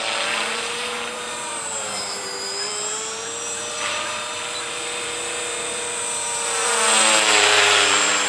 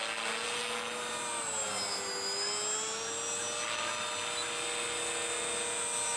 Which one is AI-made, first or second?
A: first